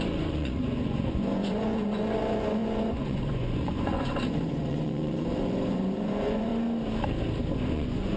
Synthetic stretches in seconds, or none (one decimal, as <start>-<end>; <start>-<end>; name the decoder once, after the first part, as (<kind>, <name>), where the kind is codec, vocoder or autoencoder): 0.0-6.5 (vocoder, Vocos); 7.5-8.2

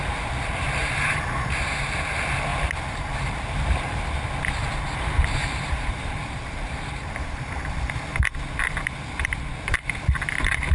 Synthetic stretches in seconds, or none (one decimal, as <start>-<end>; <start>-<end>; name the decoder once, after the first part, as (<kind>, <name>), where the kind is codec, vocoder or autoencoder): 0.8-1.5 (vocoder, BigVGAN v2); 2.5-4.0; 4.6-8.1

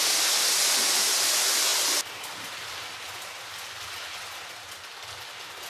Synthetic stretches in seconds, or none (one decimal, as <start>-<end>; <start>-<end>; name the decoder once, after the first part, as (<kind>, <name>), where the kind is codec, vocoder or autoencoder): none

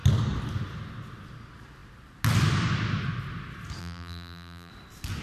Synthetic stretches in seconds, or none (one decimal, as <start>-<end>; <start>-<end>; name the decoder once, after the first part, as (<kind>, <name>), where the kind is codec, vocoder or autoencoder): 3.8-4.7 (vocoder, BigVGAN v2)

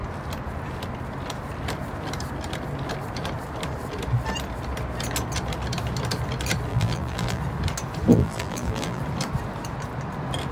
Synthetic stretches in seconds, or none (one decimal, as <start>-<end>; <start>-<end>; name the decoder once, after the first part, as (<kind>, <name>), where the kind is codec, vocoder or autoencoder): 6.7-7.4 (vocoder, BigVGAN v2); 8.1-9.0

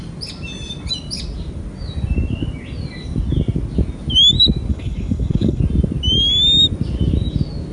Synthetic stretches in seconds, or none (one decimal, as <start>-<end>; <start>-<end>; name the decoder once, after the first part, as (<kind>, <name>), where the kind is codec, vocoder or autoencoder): 4.7-5.6 (codec, HILCodec)